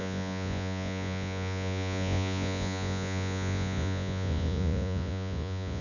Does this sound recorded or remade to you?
remade